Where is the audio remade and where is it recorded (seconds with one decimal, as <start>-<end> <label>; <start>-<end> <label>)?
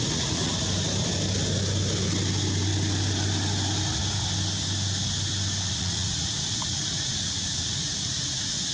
0.0-0.5 remade; 0.5-5.7 recorded; 5.7-8.7 remade